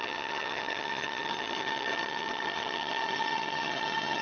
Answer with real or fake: fake